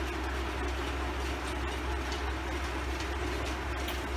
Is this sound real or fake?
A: real